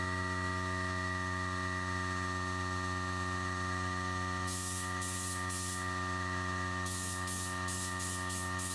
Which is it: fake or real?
fake